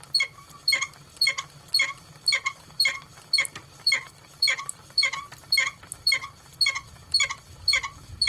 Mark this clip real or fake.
real